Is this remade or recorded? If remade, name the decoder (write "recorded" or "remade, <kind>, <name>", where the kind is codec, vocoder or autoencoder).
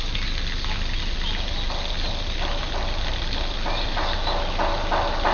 recorded